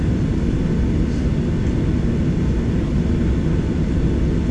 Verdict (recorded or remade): recorded